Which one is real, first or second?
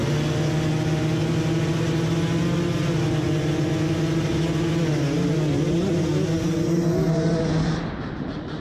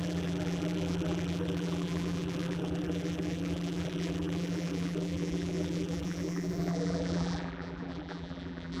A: first